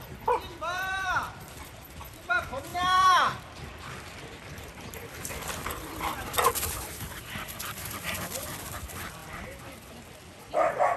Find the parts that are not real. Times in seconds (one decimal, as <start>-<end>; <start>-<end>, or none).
0.0-9.2; 10.3-11.0